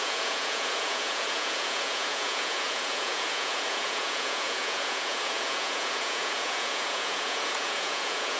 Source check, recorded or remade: remade